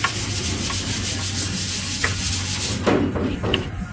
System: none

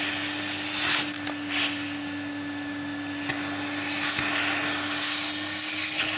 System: none